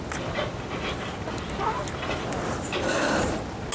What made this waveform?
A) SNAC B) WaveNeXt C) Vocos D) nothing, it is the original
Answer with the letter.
D